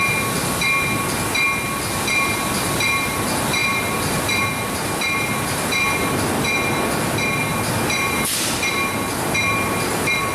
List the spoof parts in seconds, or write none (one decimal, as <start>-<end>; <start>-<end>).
none